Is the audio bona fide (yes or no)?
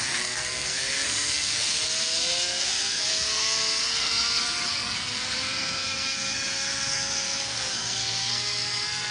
no